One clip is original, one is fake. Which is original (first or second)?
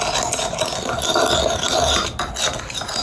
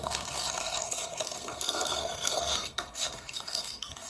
first